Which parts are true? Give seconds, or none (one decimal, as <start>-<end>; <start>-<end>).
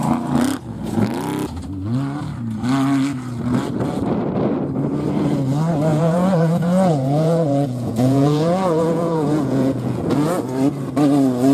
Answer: 0.0-5.9; 10.4-11.5